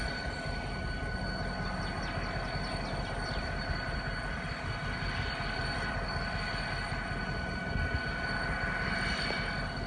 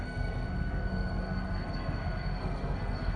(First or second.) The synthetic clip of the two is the second